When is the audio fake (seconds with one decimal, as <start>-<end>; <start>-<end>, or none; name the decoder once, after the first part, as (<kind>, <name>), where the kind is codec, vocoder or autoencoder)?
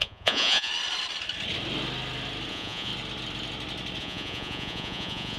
0.0-0.7 (vocoder, Vocos); 2.5-2.9; 4.0-5.4